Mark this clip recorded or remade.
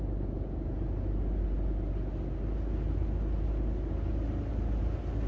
recorded